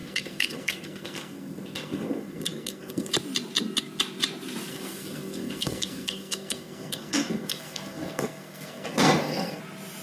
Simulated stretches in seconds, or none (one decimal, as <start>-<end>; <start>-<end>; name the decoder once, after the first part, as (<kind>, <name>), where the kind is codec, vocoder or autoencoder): 0.0-3.1 (codec, SNAC); 4.7-9.6